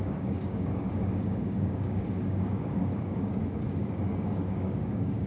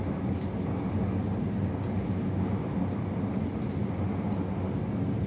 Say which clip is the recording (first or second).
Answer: second